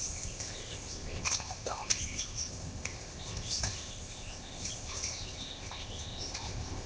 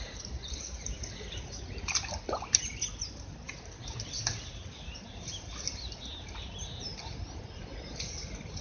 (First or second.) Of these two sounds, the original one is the second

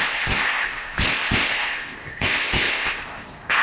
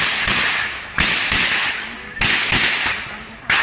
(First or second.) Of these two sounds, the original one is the second